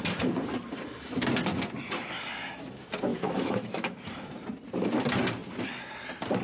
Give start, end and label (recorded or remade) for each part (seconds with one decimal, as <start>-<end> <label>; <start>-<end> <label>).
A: 0.0-3.1 recorded; 3.1-4.0 remade; 4.0-6.4 recorded